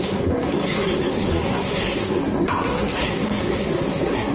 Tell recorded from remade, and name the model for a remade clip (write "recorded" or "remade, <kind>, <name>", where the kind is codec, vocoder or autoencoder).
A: remade, codec, SNAC